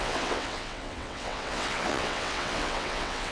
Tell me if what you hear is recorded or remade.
remade